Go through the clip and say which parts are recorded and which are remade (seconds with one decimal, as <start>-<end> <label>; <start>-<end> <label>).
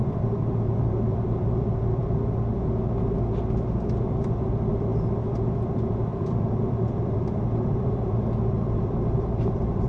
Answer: 0.0-2.0 remade; 2.0-4.0 recorded; 4.0-4.9 remade; 4.9-5.5 recorded; 5.5-9.9 remade